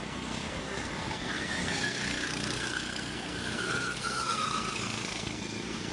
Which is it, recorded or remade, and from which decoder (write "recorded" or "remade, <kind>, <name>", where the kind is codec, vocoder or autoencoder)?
remade, codec, SNAC